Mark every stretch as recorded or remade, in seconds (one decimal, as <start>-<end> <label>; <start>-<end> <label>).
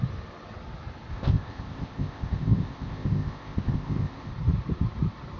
0.0-1.1 recorded; 1.1-4.3 remade; 4.3-5.4 recorded